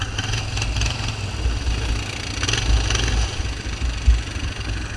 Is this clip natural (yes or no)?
yes